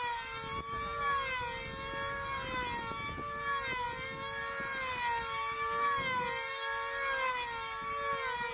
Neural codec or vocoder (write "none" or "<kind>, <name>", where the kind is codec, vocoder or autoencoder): none